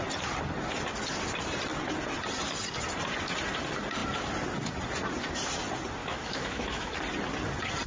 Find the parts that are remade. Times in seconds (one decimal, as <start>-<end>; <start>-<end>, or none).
6.0-7.0

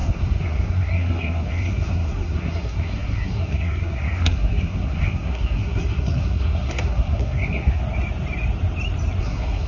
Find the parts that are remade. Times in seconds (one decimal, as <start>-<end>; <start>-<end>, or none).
0.0-7.8; 9.2-9.7